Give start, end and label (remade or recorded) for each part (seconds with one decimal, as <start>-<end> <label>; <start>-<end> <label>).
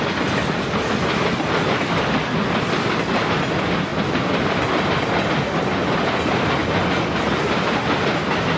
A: 0.0-6.6 remade; 6.6-8.6 recorded